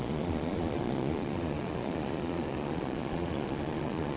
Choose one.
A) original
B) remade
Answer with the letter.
B